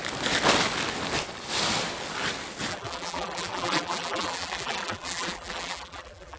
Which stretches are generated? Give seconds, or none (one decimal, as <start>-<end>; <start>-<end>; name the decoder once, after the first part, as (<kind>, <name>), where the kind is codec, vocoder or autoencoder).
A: 2.7-6.4 (vocoder, BigVGAN v2)